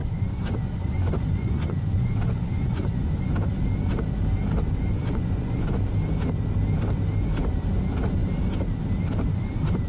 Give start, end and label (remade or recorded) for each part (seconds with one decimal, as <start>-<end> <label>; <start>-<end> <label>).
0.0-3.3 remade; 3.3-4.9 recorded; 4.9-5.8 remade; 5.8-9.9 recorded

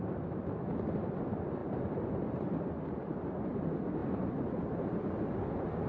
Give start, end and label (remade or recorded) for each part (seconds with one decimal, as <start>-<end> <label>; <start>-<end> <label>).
0.0-5.9 recorded

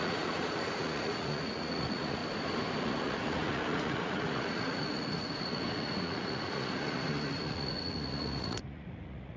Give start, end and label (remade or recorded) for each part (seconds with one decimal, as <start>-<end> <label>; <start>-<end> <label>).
0.0-2.2 remade; 2.2-2.8 recorded; 2.8-9.4 remade

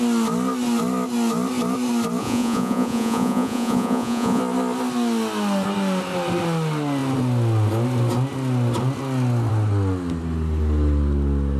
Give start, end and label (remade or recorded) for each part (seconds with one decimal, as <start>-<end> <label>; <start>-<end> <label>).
0.0-2.2 recorded; 2.2-4.4 remade; 4.4-11.6 recorded

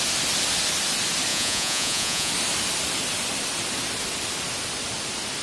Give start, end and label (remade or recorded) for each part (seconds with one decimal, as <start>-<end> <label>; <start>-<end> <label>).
0.0-1.3 recorded; 1.3-2.3 remade; 2.3-5.4 recorded

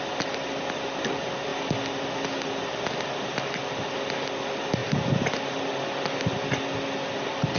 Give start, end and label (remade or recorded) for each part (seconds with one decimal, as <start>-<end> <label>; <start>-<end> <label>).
0.0-7.6 recorded